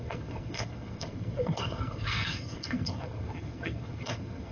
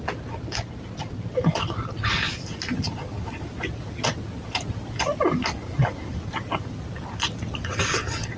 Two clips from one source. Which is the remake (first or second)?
first